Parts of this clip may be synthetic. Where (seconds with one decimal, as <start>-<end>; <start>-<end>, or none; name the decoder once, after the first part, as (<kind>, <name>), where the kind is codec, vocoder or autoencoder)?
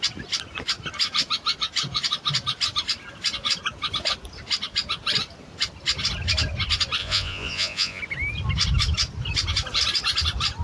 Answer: 7.0-8.0 (vocoder, Vocos)